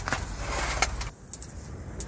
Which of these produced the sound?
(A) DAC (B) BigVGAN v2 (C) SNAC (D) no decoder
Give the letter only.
D